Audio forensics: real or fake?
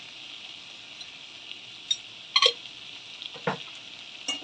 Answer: real